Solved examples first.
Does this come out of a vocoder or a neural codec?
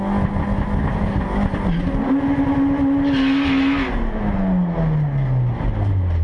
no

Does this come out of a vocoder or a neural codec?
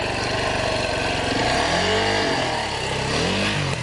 no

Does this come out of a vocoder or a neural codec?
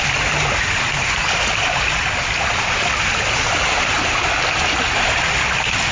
no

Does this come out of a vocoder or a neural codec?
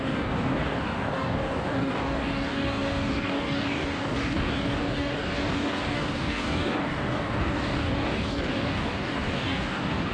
yes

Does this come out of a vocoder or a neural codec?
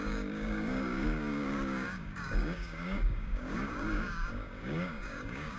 yes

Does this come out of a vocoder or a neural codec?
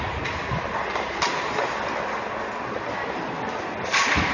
no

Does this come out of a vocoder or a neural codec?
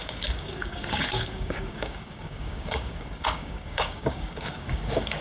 yes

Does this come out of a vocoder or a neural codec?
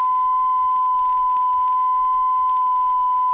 no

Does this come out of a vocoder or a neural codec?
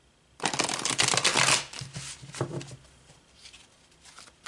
no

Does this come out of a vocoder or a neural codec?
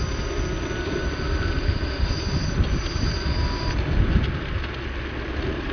no